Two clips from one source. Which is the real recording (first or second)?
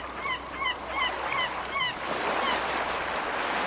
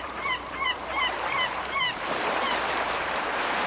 first